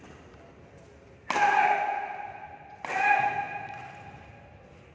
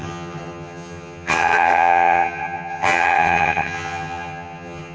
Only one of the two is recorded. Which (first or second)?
first